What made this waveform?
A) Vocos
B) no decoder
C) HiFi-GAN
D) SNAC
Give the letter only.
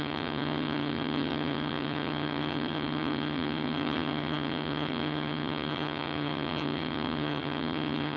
C